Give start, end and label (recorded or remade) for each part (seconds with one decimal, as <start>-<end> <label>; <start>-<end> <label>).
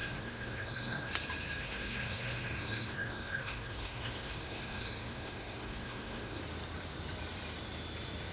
0.0-1.1 remade; 1.1-1.6 recorded; 1.6-6.4 remade; 6.4-8.3 recorded